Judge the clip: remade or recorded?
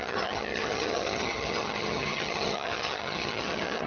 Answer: remade